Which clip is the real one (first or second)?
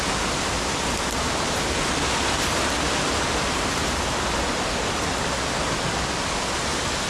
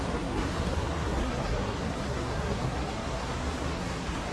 first